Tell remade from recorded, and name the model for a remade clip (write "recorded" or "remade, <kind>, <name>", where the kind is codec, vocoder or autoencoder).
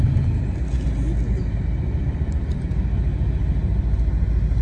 recorded